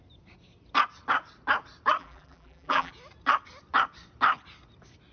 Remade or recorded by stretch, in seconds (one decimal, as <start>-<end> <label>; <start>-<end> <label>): 0.0-2.0 recorded; 2.0-2.9 remade; 2.9-5.1 recorded